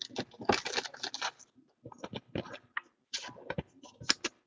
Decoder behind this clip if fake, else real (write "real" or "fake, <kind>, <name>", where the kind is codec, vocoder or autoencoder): real